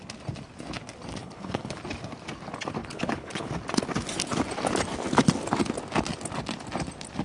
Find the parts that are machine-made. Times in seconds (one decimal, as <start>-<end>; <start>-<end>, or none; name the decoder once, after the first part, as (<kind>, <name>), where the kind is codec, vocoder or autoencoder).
1.2-1.8 (codec, HILCodec); 2.8-3.5